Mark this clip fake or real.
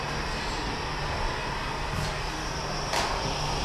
real